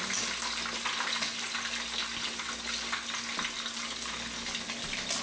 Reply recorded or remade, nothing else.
recorded